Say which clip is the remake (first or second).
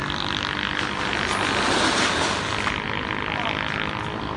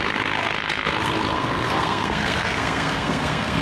second